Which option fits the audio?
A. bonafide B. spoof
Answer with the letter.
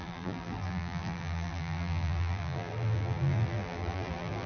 B